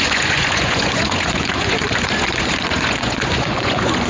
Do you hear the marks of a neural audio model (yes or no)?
yes